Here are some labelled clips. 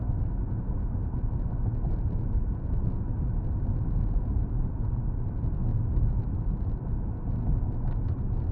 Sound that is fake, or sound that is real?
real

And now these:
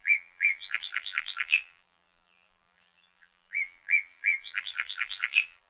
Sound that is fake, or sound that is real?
fake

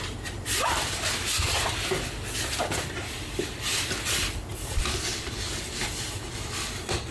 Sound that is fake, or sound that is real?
real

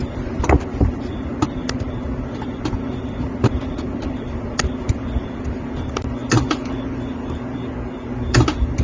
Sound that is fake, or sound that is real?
real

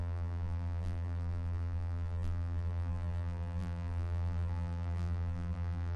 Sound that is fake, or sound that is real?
fake